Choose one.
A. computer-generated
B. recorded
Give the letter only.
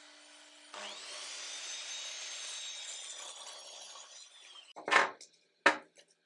B